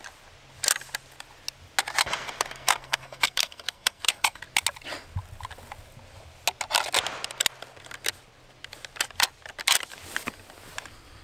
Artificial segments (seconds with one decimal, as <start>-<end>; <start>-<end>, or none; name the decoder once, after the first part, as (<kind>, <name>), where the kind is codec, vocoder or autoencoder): 2.0-4.4 (codec, SNAC)